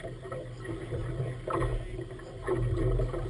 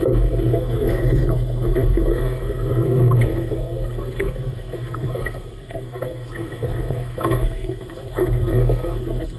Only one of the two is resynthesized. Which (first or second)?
second